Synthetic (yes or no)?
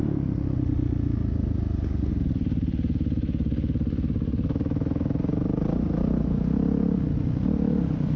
no